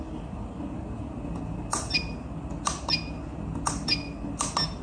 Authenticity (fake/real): real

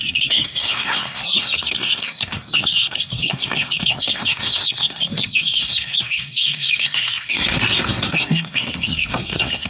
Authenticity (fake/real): fake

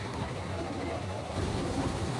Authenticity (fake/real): fake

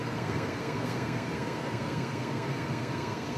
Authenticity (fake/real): fake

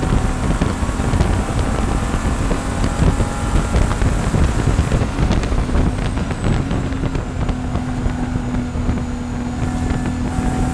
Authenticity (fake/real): real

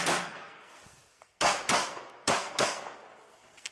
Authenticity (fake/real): fake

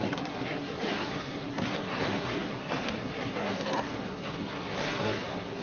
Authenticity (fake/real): fake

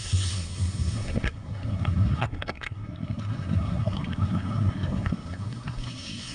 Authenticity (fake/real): fake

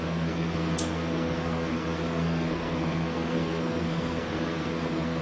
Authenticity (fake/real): fake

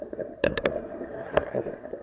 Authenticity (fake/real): fake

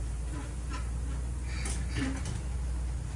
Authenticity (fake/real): real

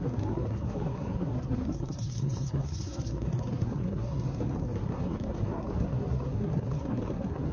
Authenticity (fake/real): fake